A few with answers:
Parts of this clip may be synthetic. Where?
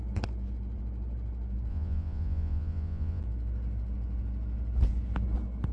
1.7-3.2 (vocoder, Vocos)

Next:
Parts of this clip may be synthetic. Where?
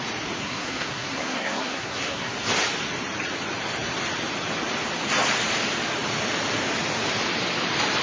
0.4-2.3 (codec, SNAC)